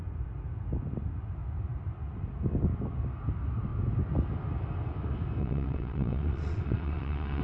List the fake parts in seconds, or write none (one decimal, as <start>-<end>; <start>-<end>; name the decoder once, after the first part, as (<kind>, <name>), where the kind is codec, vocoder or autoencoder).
5.4-7.4 (vocoder, WaveNeXt)